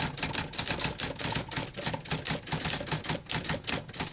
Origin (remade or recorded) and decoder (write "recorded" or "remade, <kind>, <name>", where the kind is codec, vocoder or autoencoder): recorded